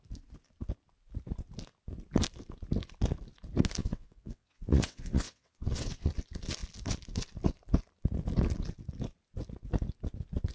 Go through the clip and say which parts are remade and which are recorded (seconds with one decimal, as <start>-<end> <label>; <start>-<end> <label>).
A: 0.0-3.8 recorded; 3.8-6.1 remade; 6.1-10.5 recorded